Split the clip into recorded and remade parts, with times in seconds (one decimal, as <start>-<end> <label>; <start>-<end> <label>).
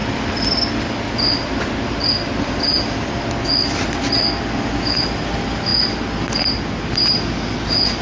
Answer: 0.0-8.0 recorded